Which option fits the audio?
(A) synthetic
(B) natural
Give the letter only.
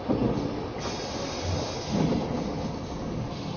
B